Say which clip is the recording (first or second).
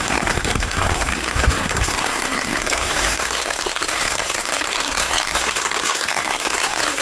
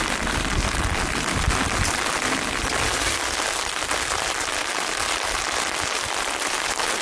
second